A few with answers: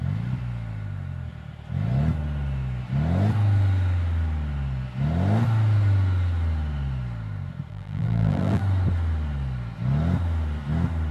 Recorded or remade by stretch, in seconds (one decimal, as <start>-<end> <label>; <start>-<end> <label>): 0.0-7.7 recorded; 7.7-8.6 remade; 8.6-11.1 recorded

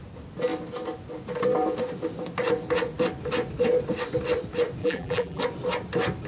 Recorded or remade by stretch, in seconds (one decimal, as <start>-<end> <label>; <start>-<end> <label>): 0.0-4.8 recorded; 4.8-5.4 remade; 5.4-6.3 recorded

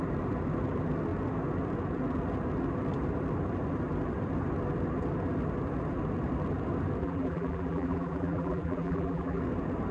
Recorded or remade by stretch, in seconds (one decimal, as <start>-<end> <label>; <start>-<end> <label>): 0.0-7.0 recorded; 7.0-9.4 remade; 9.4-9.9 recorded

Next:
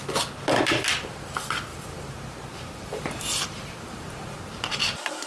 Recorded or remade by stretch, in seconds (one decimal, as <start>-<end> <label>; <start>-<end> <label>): 0.0-1.7 recorded; 1.7-4.5 remade; 4.5-5.3 recorded

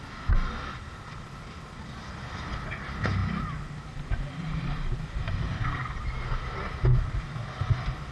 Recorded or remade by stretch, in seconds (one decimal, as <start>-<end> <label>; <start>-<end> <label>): 0.0-8.1 recorded

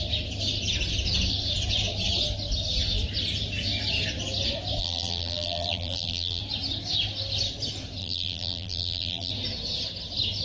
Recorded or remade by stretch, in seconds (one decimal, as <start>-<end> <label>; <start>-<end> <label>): 0.0-4.8 recorded; 4.8-6.4 remade; 6.4-8.0 recorded; 8.0-9.3 remade; 9.3-10.4 recorded

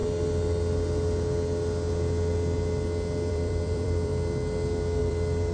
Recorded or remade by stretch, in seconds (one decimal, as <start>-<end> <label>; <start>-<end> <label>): 0.0-3.3 recorded; 3.3-4.1 remade; 4.1-5.0 recorded; 5.0-5.5 remade